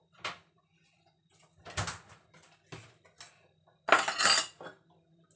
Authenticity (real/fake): real